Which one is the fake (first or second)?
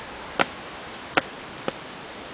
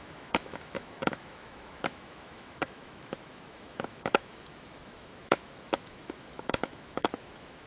second